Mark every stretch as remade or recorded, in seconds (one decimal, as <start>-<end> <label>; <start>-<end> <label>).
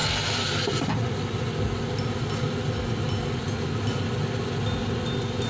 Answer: 0.0-5.5 recorded